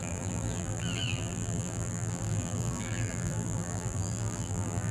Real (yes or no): no